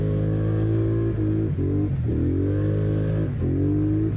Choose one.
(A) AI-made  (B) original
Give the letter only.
B